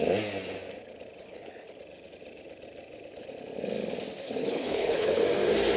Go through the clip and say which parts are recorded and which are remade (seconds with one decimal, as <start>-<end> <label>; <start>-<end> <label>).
0.0-1.2 recorded; 1.2-1.8 remade; 1.8-4.4 recorded; 4.4-5.2 remade; 5.2-5.8 recorded